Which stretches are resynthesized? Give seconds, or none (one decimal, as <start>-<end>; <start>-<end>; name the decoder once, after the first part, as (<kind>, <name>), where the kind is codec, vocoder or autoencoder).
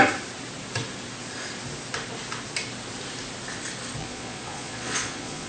4.0-5.5 (vocoder, Vocos)